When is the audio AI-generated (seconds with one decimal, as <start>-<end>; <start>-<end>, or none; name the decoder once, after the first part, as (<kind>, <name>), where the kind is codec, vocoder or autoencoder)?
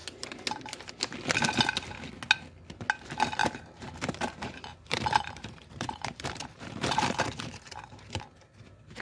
3.4-8.2 (vocoder, BigVGAN v2)